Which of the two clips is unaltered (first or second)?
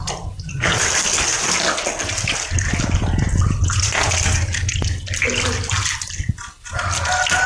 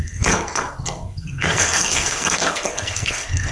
first